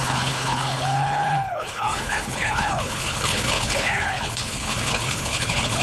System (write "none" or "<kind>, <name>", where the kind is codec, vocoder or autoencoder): codec, HILCodec